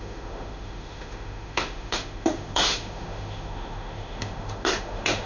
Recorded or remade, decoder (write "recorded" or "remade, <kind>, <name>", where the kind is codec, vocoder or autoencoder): remade, autoencoder, DAC-VAE